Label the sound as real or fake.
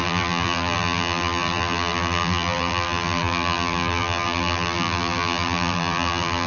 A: fake